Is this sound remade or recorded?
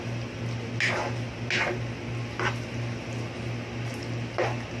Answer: recorded